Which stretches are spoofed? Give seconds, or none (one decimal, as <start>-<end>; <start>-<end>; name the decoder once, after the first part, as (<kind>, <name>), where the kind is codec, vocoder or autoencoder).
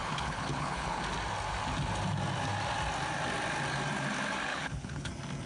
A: 0.0-1.0 (codec, HILCodec); 4.5-5.1